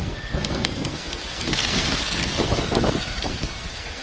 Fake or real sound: fake